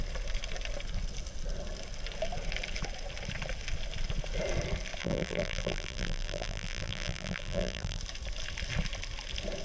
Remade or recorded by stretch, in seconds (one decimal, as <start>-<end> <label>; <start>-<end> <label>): 0.0-5.0 recorded; 5.0-8.0 remade; 8.0-9.6 recorded